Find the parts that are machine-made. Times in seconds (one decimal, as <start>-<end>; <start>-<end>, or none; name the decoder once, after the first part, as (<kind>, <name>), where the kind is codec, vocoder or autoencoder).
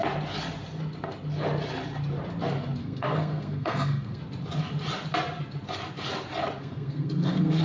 2.8-4.2 (codec, SNAC); 6.6-7.6